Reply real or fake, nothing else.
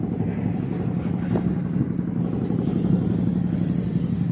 real